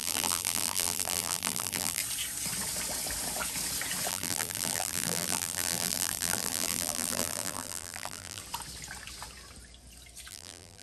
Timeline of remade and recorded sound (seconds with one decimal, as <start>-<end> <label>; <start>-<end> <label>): 0.0-2.0 remade; 2.0-4.1 recorded; 4.1-8.4 remade; 8.4-10.3 recorded; 10.3-10.8 remade